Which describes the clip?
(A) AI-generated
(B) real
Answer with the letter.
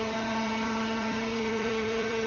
A